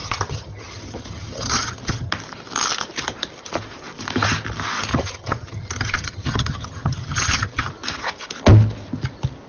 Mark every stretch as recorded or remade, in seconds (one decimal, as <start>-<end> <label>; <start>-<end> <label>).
0.0-2.1 remade; 2.1-4.9 recorded; 4.9-7.7 remade; 7.7-9.5 recorded